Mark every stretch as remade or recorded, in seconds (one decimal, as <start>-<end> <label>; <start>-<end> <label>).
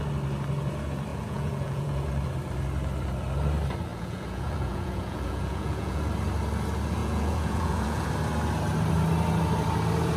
0.0-1.1 recorded; 1.1-2.1 remade; 2.1-3.9 recorded; 3.9-6.0 remade; 6.0-7.0 recorded; 7.0-8.1 remade; 8.1-10.2 recorded